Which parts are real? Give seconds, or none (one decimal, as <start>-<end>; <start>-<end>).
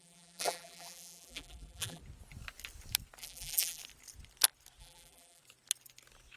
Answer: 2.0-3.2; 3.8-4.8; 5.4-6.4